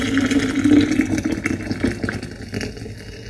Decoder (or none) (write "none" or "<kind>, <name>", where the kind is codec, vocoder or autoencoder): none